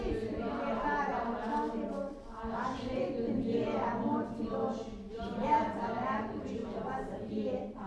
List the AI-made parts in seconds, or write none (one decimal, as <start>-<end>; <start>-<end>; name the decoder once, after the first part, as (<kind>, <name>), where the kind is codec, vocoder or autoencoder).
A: 0.0-1.1 (vocoder, BigVGAN v2); 5.1-7.9

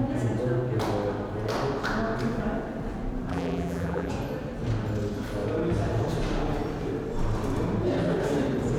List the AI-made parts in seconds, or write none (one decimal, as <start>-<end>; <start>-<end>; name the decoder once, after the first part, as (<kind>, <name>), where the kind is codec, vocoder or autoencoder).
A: 3.3-4.1 (vocoder, BigVGAN v2)

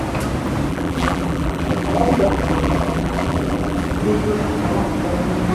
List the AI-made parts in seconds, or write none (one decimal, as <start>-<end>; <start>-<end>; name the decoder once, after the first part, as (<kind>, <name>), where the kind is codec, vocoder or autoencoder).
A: 0.7-4.0 (vocoder, BigVGAN v2)

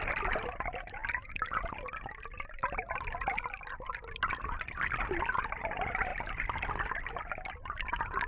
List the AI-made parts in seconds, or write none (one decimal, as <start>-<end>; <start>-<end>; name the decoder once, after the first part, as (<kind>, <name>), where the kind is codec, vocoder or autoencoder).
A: none

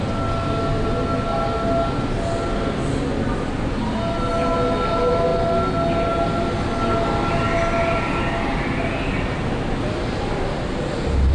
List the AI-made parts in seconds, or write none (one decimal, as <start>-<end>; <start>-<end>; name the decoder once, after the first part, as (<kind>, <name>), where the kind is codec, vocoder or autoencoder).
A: none

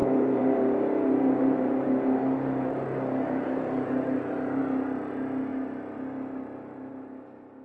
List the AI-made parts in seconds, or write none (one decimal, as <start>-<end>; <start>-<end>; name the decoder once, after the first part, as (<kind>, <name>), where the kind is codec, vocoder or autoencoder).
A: 0.0-4.6 (vocoder, BigVGAN v2)

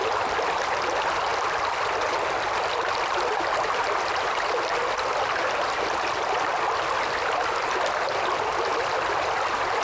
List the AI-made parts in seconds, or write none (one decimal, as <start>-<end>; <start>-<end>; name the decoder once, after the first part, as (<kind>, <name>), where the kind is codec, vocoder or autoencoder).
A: 1.3-2.7 (vocoder, BigVGAN v2)